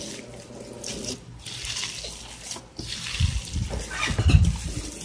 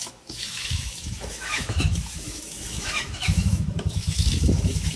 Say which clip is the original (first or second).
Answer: first